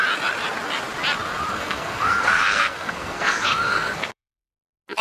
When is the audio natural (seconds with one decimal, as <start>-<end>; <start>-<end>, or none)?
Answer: 0.0-1.5; 4.5-5.0